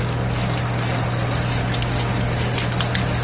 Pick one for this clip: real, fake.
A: real